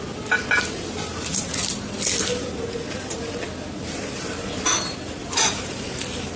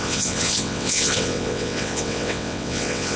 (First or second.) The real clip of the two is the first